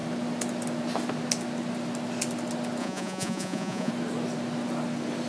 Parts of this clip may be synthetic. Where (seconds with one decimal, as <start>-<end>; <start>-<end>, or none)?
2.8-3.9